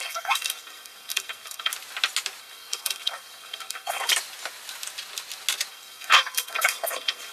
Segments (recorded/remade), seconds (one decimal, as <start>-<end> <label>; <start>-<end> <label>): 0.0-1.7 remade; 1.7-2.4 recorded; 2.4-4.1 remade; 4.1-5.7 recorded; 5.7-7.3 remade